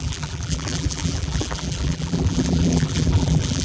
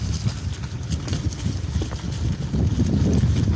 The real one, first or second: second